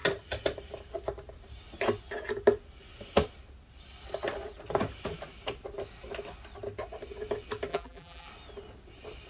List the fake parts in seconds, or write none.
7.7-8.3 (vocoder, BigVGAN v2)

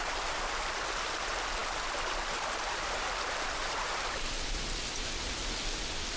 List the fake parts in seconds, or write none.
1.6-5.3 (vocoder, BigVGAN v2)

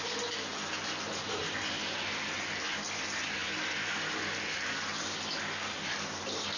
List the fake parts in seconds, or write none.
none

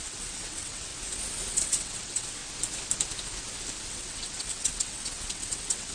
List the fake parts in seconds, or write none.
0.0-0.9 (vocoder, WaveNeXt); 1.5-2.4; 3.9-5.9

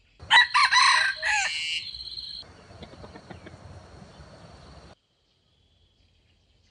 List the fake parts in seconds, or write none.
none